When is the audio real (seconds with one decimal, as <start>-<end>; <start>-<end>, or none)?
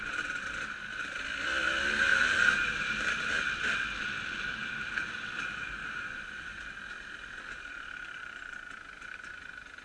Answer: 0.0-2.1; 3.0-5.8; 6.7-9.8